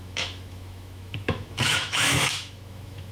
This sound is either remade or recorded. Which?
remade